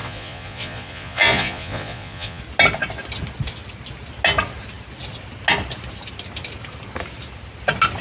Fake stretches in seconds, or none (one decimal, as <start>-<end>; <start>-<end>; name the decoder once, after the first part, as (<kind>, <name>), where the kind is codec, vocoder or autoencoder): 0.0-2.4 (vocoder, Vocos)